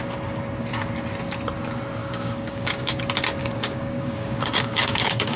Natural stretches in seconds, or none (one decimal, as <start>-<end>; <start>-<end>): 0.0-2.0; 3.0-3.4